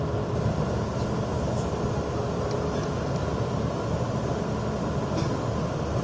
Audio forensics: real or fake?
real